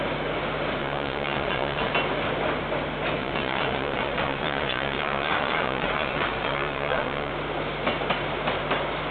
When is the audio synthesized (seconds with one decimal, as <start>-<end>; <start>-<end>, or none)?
0.8-1.9; 3.2-7.3